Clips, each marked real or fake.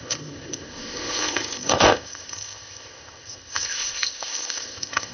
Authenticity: fake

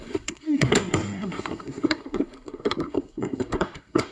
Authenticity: fake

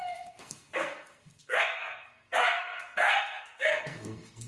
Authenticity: fake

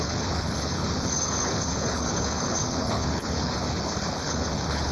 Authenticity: fake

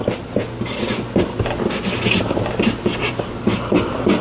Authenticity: real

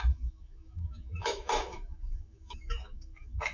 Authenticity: fake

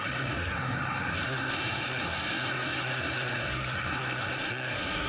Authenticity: fake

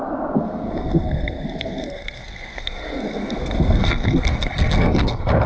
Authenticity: fake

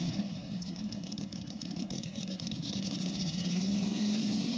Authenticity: fake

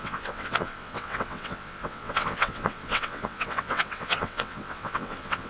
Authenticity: fake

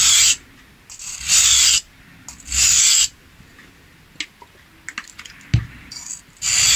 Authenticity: real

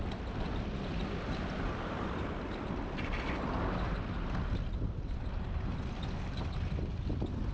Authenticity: real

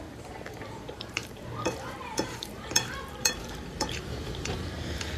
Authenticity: fake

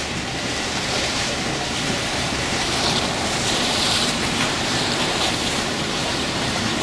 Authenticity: fake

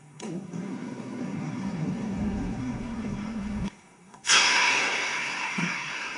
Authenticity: fake